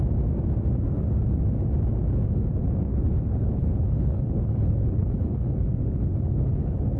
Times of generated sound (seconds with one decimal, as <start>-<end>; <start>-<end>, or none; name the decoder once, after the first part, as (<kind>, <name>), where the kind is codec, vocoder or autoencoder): 2.9-7.0 (codec, HILCodec)